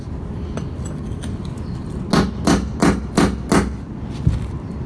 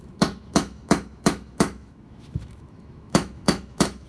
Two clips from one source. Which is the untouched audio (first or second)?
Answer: first